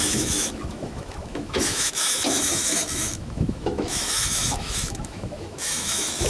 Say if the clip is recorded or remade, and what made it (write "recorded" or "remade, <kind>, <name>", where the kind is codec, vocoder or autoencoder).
remade, autoencoder, DAC-VAE